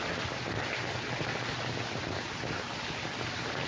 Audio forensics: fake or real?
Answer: real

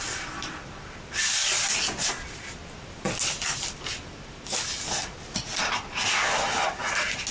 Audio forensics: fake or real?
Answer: real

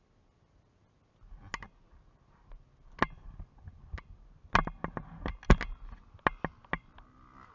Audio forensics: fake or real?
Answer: real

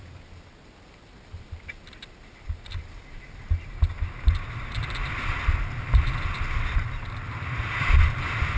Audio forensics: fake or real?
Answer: real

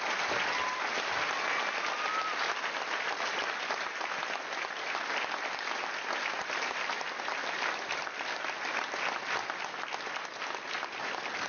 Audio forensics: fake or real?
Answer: real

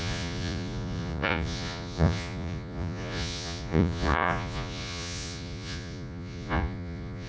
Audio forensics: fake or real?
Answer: fake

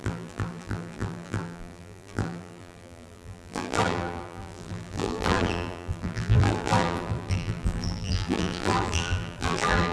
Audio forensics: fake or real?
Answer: fake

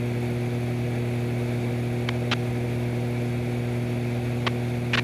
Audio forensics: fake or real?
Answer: real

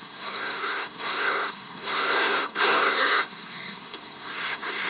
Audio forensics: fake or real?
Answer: fake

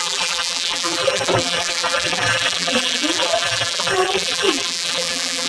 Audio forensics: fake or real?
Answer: fake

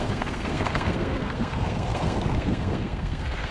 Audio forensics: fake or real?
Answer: fake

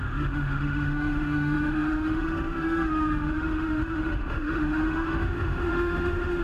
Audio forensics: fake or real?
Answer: fake